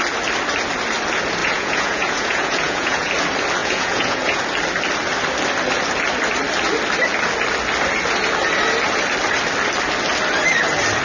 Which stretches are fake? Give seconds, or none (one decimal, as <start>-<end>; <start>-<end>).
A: 1.4-3.1; 3.6-4.4